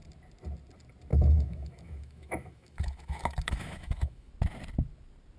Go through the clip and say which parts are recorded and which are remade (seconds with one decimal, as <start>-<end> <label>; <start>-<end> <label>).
0.0-1.1 recorded; 1.1-4.3 remade; 4.3-5.4 recorded